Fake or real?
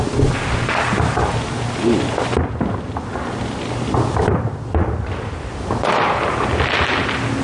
real